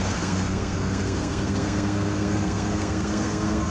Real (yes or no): no